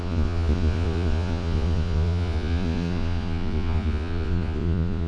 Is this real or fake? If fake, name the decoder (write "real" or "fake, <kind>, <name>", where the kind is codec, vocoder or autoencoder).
fake, vocoder, Vocos